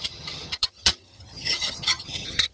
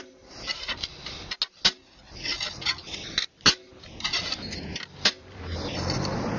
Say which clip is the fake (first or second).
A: first